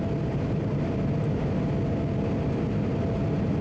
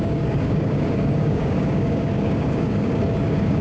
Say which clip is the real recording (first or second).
first